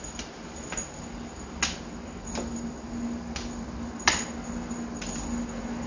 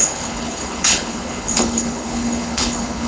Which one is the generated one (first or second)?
second